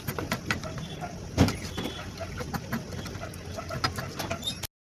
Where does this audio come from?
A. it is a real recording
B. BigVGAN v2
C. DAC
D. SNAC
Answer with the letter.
A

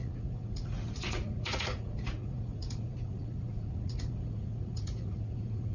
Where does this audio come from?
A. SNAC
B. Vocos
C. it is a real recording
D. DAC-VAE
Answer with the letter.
B